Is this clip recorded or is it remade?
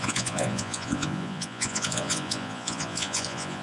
remade